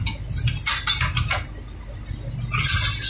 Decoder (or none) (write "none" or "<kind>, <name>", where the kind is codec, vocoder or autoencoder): none